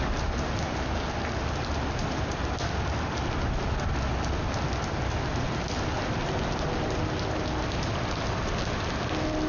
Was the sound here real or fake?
real